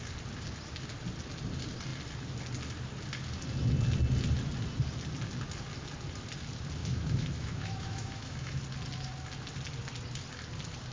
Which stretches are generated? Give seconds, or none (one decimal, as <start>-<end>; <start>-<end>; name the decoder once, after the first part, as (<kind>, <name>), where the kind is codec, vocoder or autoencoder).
6.8-8.6 (autoencoder, DAC-VAE)